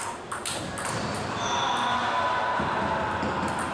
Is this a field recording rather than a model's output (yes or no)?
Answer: yes